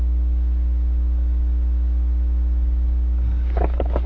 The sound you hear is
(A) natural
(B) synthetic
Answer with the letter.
A